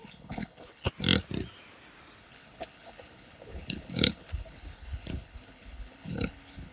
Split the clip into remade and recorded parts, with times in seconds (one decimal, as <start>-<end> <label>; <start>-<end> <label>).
0.0-0.9 remade; 0.9-2.2 recorded; 2.2-6.7 remade

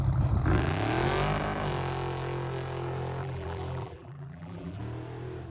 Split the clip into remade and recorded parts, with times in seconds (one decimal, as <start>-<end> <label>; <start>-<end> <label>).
0.0-3.2 recorded; 3.2-4.8 remade; 4.8-5.5 recorded

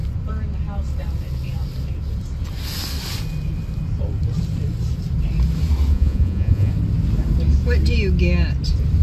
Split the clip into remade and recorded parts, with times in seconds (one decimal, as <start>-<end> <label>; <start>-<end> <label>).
0.0-5.9 recorded; 5.9-6.7 remade; 6.7-9.0 recorded

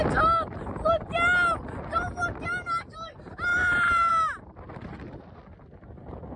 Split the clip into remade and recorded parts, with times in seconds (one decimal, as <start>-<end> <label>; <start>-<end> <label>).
0.0-3.5 recorded; 3.5-4.1 remade; 4.1-6.4 recorded

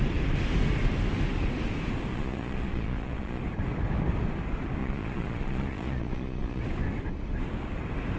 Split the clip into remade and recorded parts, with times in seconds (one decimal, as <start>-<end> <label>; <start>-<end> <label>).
0.0-2.1 recorded; 2.1-3.4 remade; 3.4-4.8 recorded; 4.8-6.6 remade; 6.6-8.2 recorded